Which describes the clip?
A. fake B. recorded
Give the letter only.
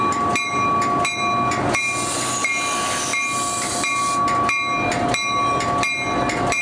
B